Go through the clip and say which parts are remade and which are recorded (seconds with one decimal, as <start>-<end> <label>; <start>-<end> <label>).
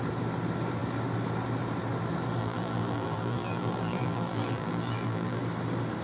0.0-2.4 recorded; 2.4-5.4 remade; 5.4-6.0 recorded